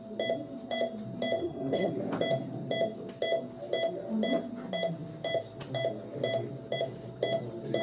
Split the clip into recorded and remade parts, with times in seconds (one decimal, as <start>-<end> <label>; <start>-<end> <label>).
0.0-1.4 recorded; 1.4-1.9 remade; 1.9-7.8 recorded